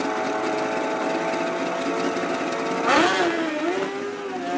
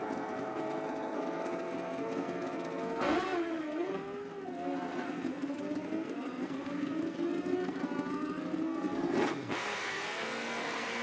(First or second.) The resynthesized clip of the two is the second